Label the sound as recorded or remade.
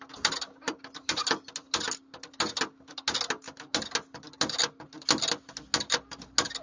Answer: recorded